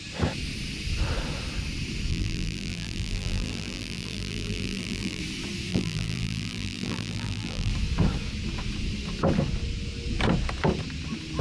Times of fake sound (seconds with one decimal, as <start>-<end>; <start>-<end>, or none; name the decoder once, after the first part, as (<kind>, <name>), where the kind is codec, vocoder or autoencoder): 2.1-5.2 (vocoder, BigVGAN v2); 5.7-7.7